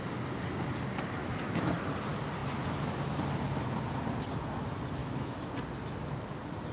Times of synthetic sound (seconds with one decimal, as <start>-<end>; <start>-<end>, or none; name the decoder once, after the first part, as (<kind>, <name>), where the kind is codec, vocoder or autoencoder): 1.2-1.7 (autoencoder, DAC-VAE); 5.0-5.5

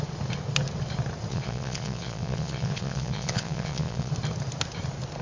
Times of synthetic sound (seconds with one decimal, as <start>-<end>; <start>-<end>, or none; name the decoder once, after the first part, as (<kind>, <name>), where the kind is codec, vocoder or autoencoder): 1.3-4.1 (vocoder, Vocos)

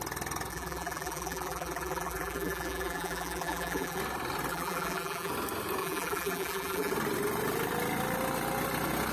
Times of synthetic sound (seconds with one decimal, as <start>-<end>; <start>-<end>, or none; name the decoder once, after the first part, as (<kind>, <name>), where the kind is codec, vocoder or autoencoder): 0.5-4.0 (vocoder, BigVGAN v2); 4.5-5.3; 5.8-6.9

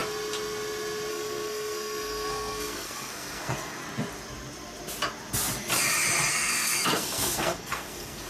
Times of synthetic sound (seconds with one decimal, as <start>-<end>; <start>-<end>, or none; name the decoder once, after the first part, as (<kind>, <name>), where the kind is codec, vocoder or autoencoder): 1.1-3.8 (codec, SNAC); 6.3-8.3

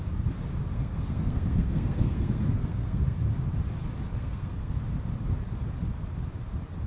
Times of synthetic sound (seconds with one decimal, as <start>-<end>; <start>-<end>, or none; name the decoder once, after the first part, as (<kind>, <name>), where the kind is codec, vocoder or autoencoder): 0.7-3.2 (codec, SNAC); 4.1-4.8